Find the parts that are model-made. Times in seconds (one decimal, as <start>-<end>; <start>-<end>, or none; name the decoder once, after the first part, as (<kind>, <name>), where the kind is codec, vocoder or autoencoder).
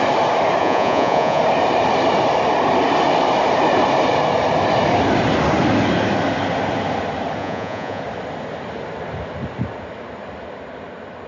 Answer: 0.6-1.4 (vocoder, Vocos); 7.4-8.0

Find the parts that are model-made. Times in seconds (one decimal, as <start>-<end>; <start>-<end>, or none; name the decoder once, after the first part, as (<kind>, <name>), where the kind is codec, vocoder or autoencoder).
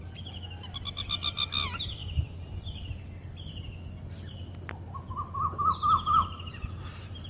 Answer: none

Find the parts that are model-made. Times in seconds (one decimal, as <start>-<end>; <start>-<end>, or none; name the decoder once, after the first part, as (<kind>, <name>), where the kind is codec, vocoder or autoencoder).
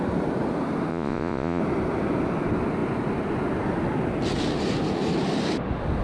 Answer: 0.9-1.6 (vocoder, Vocos)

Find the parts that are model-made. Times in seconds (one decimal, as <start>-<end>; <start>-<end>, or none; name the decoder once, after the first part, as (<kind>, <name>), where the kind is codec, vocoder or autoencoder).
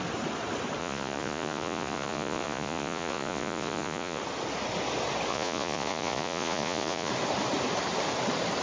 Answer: 0.8-4.2 (vocoder, Vocos); 5.3-7.1